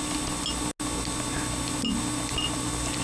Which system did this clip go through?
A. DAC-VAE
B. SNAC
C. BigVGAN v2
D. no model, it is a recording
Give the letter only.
D